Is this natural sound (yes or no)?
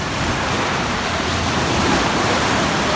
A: yes